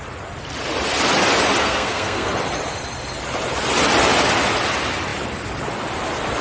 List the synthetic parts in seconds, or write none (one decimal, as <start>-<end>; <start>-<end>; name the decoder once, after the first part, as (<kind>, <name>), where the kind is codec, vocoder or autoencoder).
1.6-2.3 (codec, SNAC)